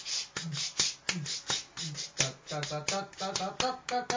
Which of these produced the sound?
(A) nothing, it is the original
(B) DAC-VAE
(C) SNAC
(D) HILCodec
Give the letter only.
A